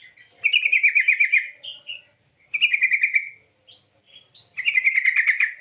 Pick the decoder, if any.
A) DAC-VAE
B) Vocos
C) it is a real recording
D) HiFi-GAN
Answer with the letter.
C